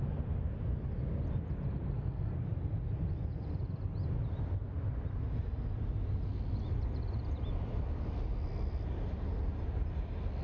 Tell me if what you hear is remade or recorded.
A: recorded